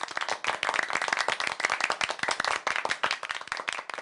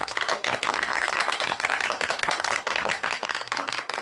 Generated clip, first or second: second